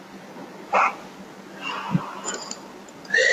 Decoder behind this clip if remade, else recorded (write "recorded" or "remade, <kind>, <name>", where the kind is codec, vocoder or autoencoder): recorded